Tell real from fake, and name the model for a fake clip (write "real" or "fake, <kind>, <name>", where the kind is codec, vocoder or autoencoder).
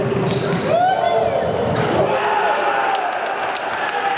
real